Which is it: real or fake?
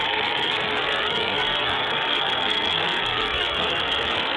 fake